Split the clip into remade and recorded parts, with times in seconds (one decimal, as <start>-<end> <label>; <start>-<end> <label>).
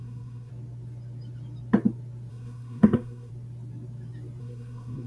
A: 0.0-0.5 remade; 0.5-2.3 recorded; 2.3-3.3 remade; 3.3-4.4 recorded; 4.4-5.1 remade